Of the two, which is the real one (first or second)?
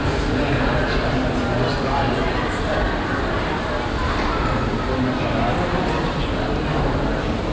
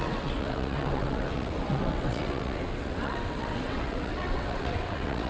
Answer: first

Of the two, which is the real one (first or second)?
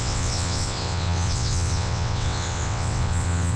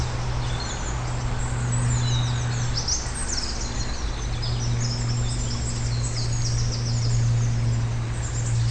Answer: second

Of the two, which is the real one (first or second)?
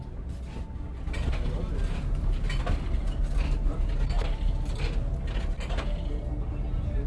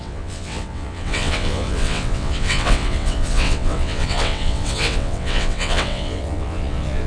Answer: first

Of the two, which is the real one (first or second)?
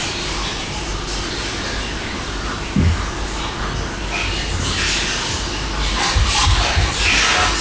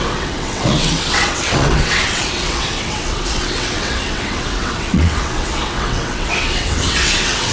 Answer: first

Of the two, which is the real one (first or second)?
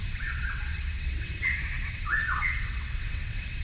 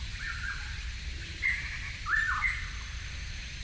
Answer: second